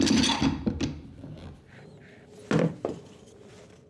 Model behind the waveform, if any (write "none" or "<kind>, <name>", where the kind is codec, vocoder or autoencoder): none